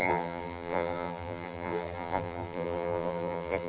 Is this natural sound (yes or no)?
no